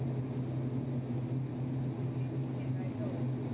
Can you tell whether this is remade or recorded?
recorded